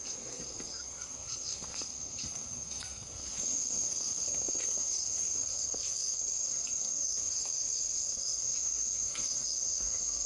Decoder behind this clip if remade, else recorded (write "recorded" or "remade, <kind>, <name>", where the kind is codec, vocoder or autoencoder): remade, codec, SNAC